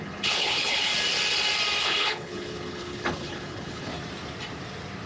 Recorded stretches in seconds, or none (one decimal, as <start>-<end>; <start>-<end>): 0.9-1.8; 3.9-5.1